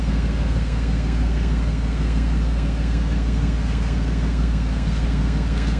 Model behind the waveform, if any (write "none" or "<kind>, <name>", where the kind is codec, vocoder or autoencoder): codec, SNAC